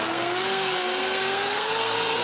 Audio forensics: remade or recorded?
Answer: remade